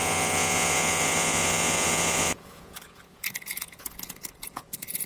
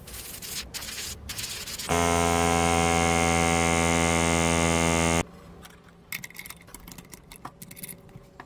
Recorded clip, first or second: second